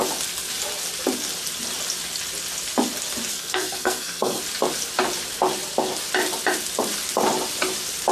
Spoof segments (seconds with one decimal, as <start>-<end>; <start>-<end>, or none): 3.3-4.4